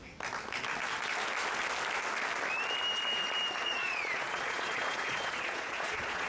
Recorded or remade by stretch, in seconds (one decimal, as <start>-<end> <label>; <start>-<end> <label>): 0.0-3.6 recorded; 3.6-6.3 remade